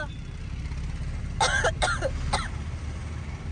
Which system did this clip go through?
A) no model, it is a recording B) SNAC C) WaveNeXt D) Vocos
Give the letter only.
A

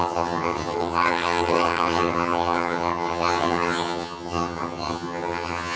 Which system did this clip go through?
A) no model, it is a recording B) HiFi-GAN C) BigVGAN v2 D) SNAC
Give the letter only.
B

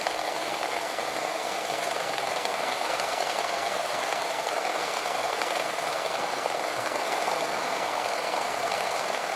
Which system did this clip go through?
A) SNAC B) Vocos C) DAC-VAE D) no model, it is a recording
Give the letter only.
A